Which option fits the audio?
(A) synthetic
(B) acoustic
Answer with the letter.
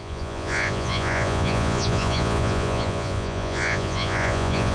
A